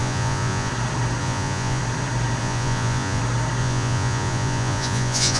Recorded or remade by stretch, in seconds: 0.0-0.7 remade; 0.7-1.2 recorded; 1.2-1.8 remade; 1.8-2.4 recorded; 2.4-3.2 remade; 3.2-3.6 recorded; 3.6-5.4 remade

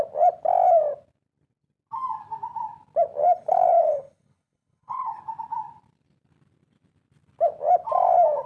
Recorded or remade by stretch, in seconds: 0.0-3.2 recorded; 3.2-5.2 remade; 5.2-8.5 recorded

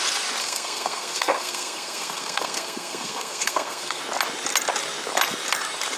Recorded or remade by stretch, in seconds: 0.0-0.4 recorded; 0.4-4.0 remade; 4.0-6.0 recorded

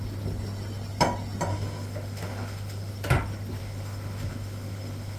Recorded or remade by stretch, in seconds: 0.0-1.5 recorded; 1.5-2.9 remade; 2.9-3.6 recorded; 3.6-5.2 remade